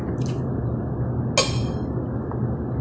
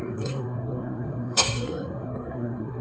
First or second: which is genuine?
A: first